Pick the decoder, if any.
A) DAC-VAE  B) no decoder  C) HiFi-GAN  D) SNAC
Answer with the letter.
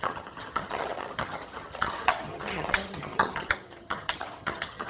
C